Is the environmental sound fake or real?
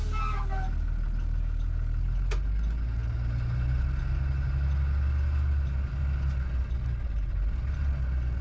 real